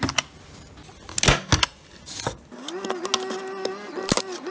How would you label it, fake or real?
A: real